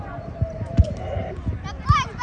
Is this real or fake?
real